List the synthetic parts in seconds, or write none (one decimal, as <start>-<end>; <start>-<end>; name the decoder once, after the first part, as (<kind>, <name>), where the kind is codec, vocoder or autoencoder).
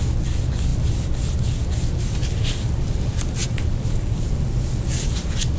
none